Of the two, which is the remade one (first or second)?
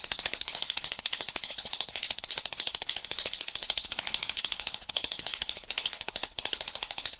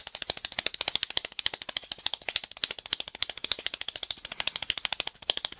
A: first